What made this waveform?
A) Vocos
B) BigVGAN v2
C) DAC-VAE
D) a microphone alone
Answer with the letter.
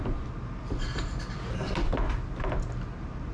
D